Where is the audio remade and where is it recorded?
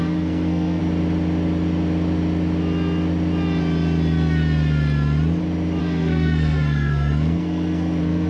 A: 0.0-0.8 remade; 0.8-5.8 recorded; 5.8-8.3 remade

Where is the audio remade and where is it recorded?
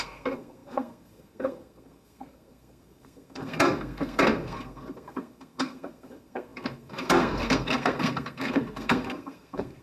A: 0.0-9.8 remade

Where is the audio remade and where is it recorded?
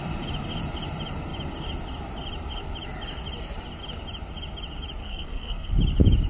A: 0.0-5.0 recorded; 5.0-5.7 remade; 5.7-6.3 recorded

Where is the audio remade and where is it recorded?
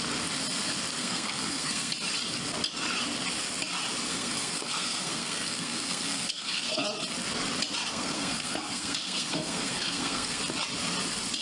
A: 0.0-1.0 recorded; 1.0-1.9 remade; 1.9-4.1 recorded; 4.1-6.7 remade; 6.7-7.9 recorded; 7.9-10.4 remade; 10.4-11.4 recorded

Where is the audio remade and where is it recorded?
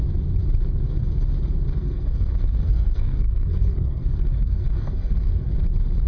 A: 0.0-1.8 recorded; 1.8-5.5 remade; 5.5-6.1 recorded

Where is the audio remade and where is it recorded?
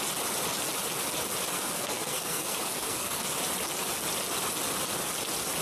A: 0.0-1.5 recorded; 1.5-3.2 remade; 3.2-5.6 recorded